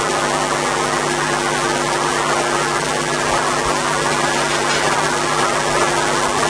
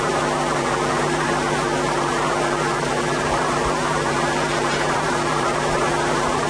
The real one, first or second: first